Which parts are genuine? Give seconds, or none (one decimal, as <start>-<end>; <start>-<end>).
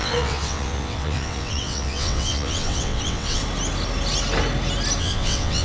3.4-5.0